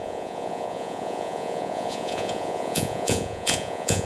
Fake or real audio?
fake